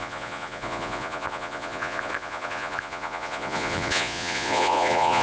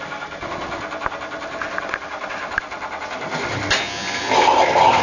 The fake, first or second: first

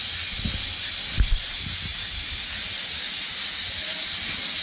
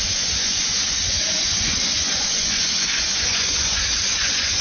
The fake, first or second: second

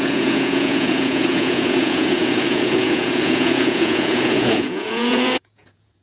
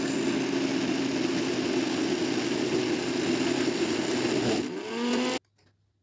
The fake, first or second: first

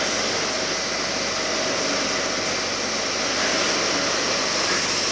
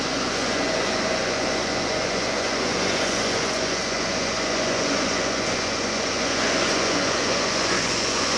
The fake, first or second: second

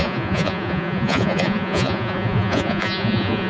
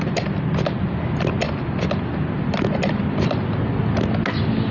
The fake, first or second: first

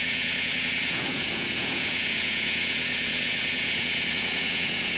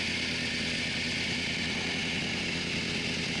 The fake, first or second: first